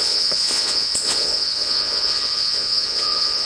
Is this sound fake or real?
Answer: fake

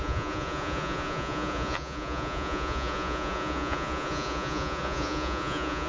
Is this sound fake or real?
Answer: fake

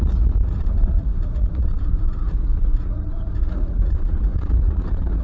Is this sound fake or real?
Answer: fake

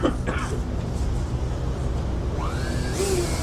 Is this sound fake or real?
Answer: real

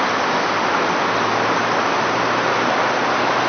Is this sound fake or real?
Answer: real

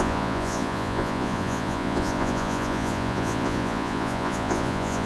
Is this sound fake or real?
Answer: fake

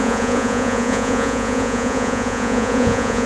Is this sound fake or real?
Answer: fake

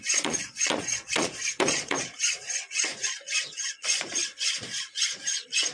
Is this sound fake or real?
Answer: fake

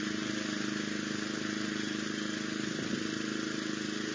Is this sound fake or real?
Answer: real